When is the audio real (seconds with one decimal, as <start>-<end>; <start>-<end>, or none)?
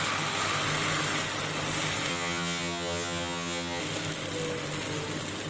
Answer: 0.0-2.1; 3.8-5.5